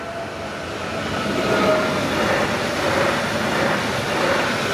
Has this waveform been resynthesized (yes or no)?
no